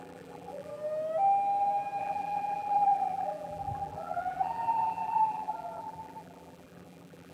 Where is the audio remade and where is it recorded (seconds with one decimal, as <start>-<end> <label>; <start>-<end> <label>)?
0.0-0.7 remade; 0.7-2.0 recorded; 2.0-7.3 remade